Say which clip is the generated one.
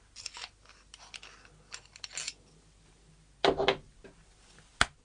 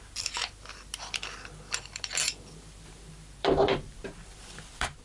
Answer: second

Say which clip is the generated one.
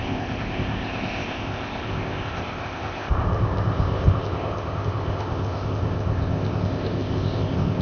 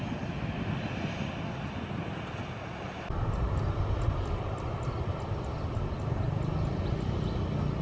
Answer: first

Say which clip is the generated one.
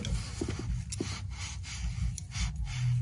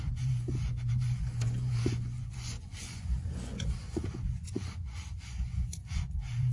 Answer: second